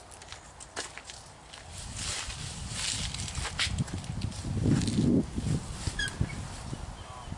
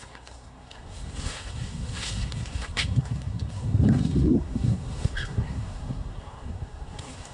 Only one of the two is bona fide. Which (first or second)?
first